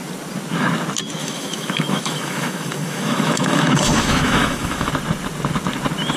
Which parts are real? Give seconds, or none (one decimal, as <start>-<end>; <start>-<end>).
0.0-1.2; 4.9-6.2